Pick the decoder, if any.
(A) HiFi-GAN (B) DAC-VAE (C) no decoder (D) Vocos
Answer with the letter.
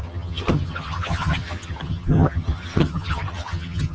A